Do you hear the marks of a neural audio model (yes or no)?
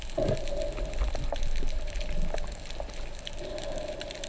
no